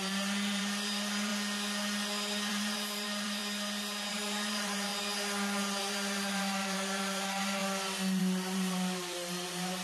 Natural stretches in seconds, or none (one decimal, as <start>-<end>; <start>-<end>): 1.3-2.5; 3.4-4.1; 4.9-5.8; 7.6-8.2